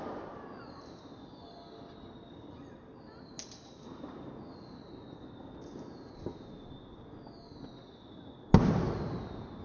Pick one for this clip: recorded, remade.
recorded